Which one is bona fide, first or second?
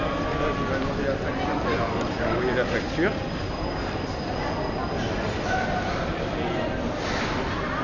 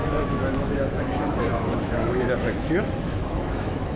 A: first